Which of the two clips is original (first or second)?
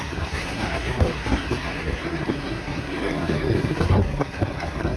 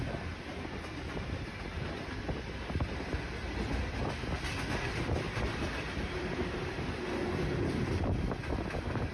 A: second